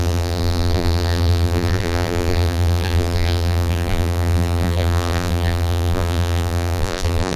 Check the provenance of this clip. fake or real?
fake